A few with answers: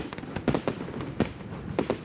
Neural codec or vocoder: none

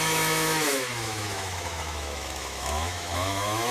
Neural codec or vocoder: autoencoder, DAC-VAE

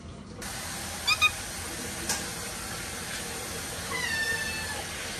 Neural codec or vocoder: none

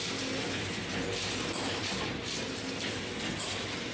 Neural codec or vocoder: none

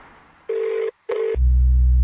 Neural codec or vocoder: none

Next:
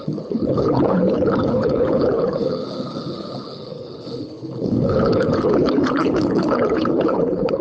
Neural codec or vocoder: codec, HILCodec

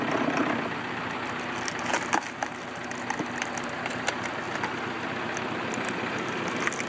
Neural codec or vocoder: none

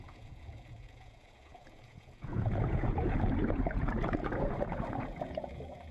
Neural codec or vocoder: vocoder, Vocos